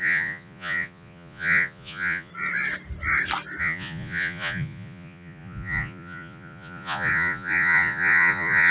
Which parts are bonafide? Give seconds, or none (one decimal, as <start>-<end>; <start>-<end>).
2.3-3.6